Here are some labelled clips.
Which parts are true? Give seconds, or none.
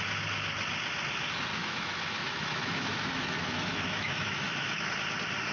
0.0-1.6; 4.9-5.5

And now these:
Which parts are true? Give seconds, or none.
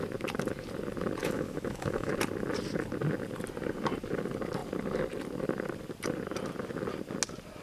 0.0-1.2; 2.1-7.6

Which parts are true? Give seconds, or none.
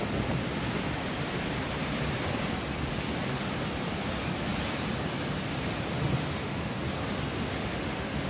0.0-6.3; 6.8-7.5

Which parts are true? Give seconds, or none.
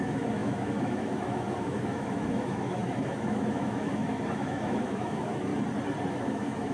5.5-6.1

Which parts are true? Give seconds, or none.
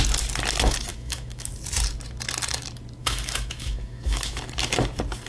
0.0-0.9; 1.5-3.0; 4.4-5.3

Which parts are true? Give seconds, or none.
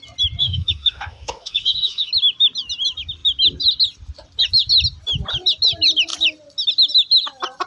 0.0-0.4; 2.1-7.7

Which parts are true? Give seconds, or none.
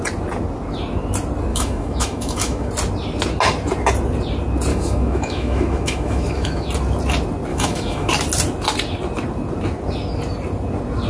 0.0-1.5; 2.7-4.7; 6.7-7.5; 8.1-11.1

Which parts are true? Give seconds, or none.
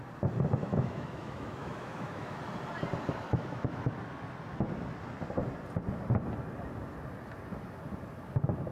0.0-0.6; 2.4-3.3; 3.9-8.7